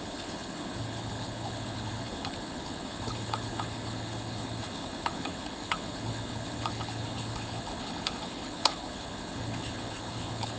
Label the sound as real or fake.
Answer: fake